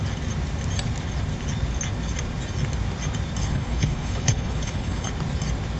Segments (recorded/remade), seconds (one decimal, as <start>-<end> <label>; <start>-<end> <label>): 0.0-3.4 recorded; 3.4-5.1 remade; 5.1-5.8 recorded